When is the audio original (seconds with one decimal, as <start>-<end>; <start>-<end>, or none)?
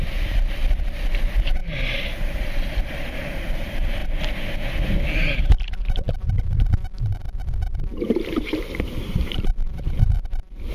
4.0-5.4